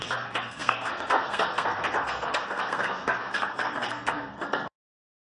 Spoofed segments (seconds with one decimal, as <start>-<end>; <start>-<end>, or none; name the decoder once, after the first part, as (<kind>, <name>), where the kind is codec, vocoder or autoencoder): 0.0-5.3 (codec, SNAC)